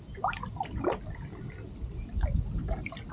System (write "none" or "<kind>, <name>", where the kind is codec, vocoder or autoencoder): none